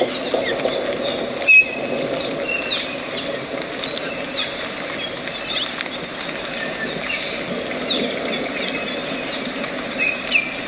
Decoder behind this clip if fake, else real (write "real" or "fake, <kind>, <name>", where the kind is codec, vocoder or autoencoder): real